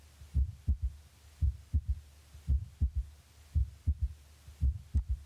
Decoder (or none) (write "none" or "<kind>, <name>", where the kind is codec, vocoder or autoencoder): none